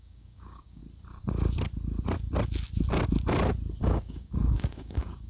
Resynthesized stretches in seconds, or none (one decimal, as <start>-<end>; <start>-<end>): 0.0-0.8; 3.8-5.3